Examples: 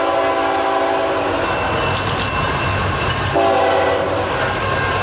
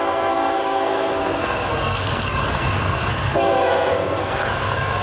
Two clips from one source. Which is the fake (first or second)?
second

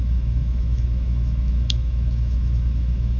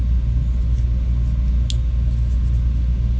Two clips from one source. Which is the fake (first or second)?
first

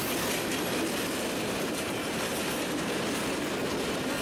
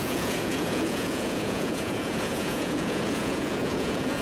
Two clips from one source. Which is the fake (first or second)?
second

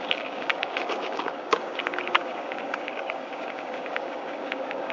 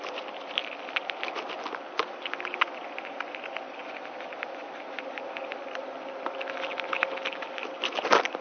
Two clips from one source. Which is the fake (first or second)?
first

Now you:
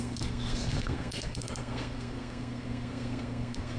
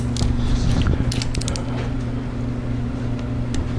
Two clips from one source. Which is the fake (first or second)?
first